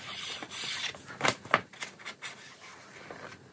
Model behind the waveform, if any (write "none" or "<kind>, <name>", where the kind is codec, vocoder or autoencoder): none